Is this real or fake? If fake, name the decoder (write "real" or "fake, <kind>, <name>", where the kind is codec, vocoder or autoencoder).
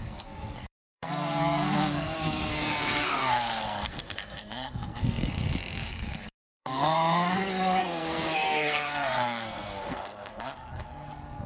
fake, codec, SNAC